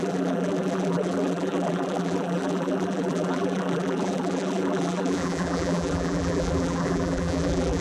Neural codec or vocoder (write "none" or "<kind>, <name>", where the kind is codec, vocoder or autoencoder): vocoder, BigVGAN v2